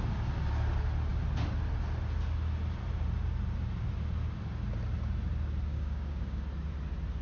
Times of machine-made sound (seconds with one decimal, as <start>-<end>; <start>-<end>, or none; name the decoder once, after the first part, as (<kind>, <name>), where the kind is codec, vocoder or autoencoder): 5.7-6.4 (codec, DAC)